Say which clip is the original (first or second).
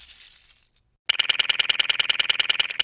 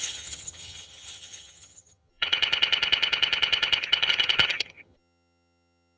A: first